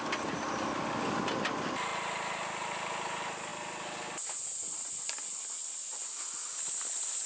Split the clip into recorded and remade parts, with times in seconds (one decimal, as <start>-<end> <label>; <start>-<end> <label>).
0.0-7.3 recorded